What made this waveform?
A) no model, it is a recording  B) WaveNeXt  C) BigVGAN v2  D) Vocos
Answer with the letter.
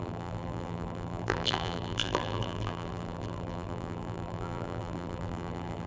C